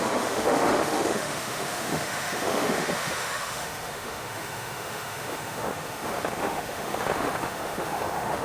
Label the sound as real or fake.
fake